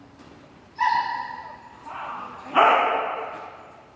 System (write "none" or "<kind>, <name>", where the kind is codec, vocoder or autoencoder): vocoder, BigVGAN v2